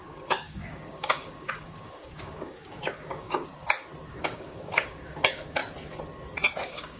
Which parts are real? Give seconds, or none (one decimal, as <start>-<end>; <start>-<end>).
3.5-4.1; 5.6-6.6